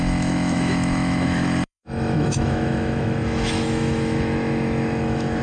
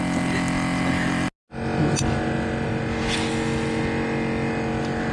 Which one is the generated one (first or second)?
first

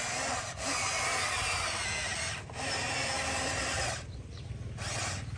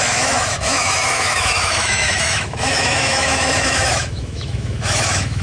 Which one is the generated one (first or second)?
second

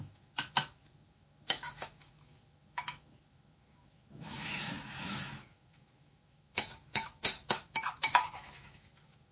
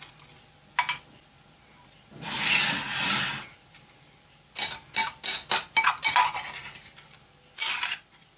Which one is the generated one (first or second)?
first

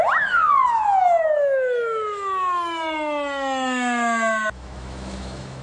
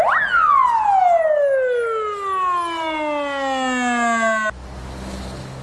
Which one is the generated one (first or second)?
first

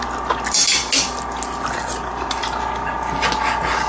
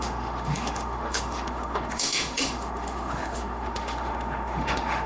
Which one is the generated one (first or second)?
second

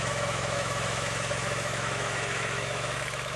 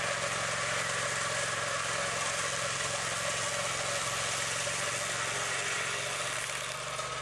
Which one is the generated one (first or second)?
first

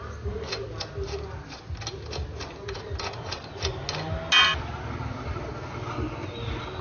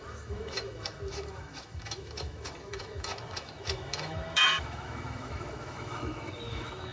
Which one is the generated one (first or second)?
second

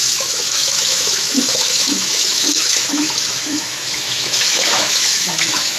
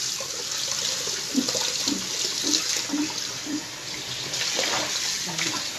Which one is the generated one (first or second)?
first